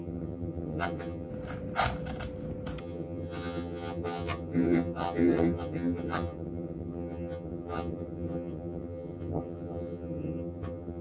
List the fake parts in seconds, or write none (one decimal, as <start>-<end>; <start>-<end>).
0.0-1.3; 2.8-11.0